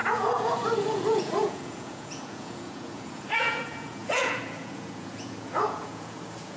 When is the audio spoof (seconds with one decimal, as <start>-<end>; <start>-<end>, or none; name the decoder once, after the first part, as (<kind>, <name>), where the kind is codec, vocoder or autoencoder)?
0.0-6.6 (vocoder, Vocos)